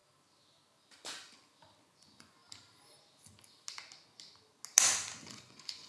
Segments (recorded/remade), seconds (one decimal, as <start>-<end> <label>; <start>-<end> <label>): 0.0-1.8 recorded; 1.8-2.4 remade; 2.4-5.3 recorded; 5.3-5.9 remade